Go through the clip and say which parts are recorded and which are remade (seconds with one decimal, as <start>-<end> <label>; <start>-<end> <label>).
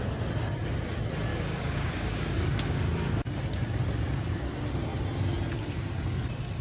0.0-1.3 recorded; 1.3-2.8 remade; 2.8-6.6 recorded